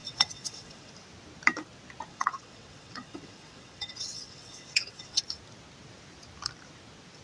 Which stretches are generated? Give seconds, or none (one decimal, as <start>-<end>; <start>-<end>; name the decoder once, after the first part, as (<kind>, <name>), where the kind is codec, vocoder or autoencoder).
0.0-0.9 (vocoder, WaveNeXt); 2.1-5.2